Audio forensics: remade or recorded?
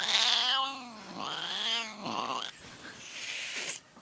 recorded